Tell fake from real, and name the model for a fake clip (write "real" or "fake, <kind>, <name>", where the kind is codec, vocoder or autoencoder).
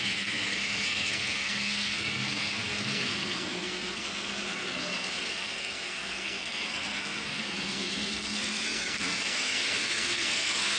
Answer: fake, codec, SNAC